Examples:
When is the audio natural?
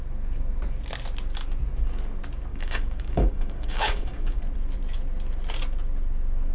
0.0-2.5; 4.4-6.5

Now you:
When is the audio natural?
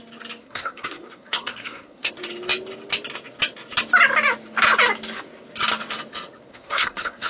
0.0-0.4; 2.1-6.5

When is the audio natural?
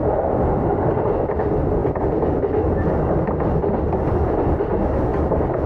0.0-5.7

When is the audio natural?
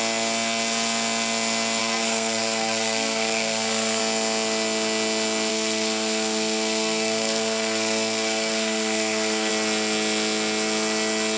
0.0-1.8; 4.0-5.5; 9.5-11.4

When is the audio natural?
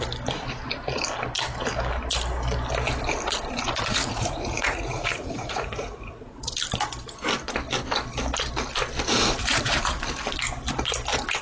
0.0-3.9; 6.5-9.4; 10.0-11.4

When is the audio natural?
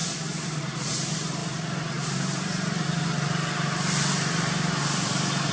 0.6-1.4; 4.7-5.5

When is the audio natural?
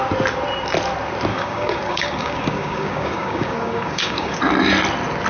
0.0-1.3; 4.4-5.3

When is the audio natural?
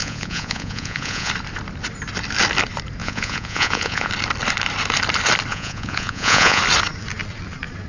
1.3-3.0; 4.1-5.5; 6.6-7.9